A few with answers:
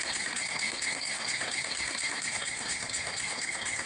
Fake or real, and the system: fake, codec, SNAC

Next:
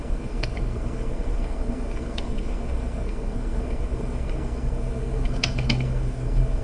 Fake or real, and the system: fake, codec, SNAC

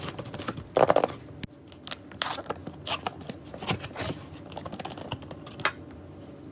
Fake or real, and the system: real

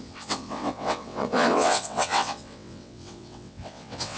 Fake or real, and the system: fake, vocoder, WaveNeXt